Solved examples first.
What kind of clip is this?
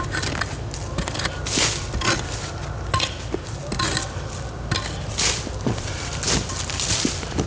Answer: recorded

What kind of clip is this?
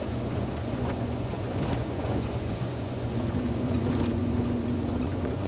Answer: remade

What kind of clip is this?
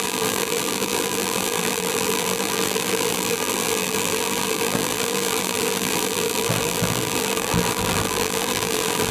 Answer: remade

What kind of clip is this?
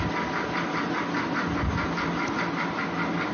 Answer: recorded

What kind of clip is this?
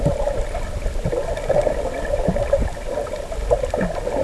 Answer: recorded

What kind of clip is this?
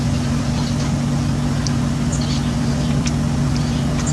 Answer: recorded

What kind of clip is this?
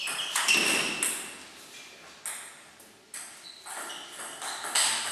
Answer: recorded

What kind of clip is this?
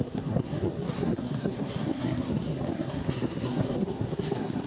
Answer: remade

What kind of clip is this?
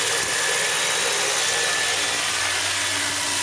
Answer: recorded